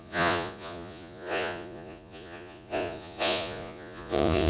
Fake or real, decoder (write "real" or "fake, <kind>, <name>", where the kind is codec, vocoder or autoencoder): fake, vocoder, Vocos